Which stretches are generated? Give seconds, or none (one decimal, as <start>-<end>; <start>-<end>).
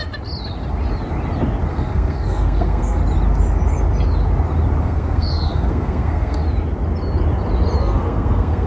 1.7-3.0; 4.8-6.4; 7.8-8.7